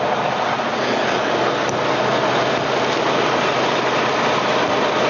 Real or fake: real